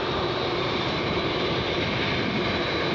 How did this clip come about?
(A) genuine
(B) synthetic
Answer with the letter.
A